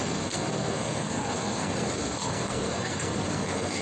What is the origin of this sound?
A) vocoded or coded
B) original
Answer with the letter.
A